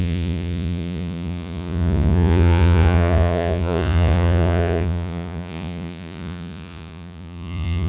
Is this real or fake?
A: fake